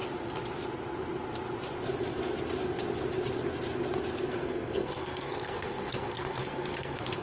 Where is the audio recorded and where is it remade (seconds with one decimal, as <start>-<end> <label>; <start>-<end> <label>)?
0.0-4.3 recorded; 4.3-7.2 remade